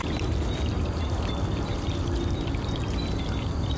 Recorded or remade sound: recorded